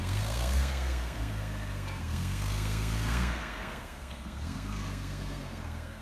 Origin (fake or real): fake